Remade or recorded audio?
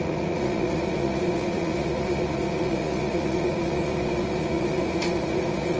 remade